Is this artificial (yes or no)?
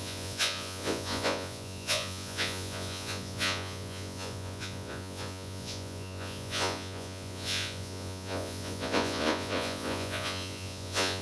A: yes